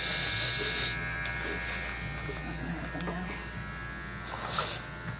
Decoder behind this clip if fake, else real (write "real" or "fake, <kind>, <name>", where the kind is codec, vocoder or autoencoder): real